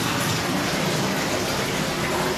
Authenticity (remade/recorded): recorded